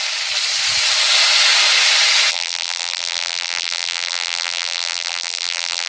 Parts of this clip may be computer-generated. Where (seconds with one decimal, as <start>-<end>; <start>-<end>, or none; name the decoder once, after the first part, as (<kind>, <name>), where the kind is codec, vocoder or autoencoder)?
2.3-5.9 (vocoder, BigVGAN v2)